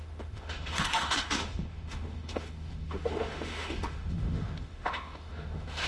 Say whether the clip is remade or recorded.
remade